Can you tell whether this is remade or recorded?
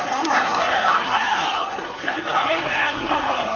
remade